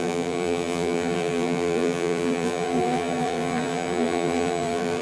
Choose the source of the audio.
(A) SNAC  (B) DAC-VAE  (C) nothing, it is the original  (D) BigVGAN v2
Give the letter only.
D